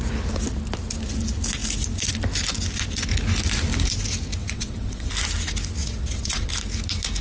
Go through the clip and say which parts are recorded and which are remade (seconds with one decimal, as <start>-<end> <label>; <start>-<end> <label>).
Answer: 0.0-4.4 recorded; 4.4-5.1 remade; 5.1-5.8 recorded; 5.8-6.5 remade; 6.5-7.2 recorded